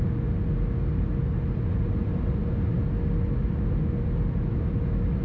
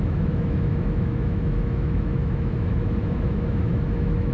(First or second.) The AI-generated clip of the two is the second